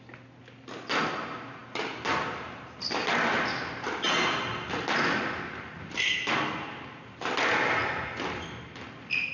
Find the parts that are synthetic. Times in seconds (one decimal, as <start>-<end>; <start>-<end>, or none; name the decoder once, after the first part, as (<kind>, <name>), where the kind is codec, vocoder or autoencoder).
none